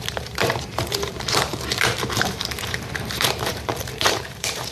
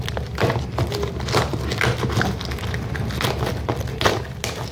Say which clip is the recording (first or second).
second